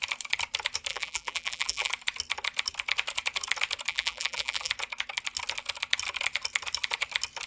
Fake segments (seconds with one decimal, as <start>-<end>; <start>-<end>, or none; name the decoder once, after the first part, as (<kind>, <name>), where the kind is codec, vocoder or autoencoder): 0.9-1.9 (vocoder, BigVGAN v2); 3.9-4.7